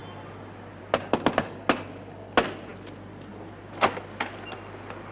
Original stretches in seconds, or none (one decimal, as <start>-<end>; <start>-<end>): 0.0-5.1